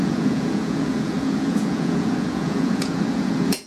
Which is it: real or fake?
fake